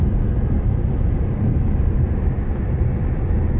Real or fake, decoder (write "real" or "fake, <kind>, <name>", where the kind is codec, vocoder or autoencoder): real